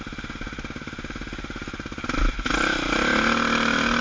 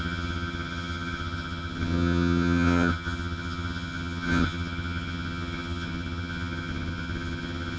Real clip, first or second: first